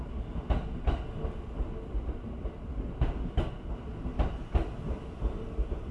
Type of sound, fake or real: real